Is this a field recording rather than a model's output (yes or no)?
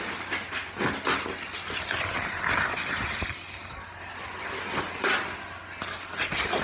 yes